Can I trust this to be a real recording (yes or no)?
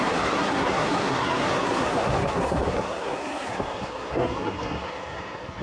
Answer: no